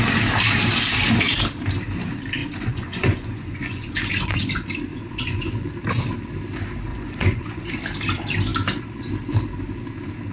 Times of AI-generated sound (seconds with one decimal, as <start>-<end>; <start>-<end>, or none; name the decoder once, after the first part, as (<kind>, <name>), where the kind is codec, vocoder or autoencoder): 2.4-4.4 (vocoder, Vocos); 4.9-5.7; 6.9-7.7